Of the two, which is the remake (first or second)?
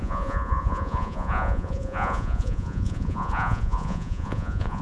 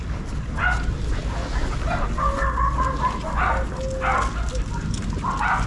first